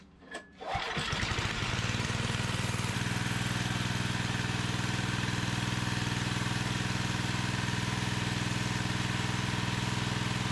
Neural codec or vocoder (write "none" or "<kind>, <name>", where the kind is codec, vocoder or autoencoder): vocoder, BigVGAN v2